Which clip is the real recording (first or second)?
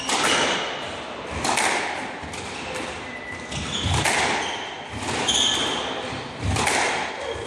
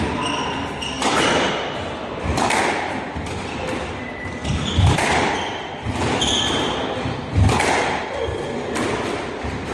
first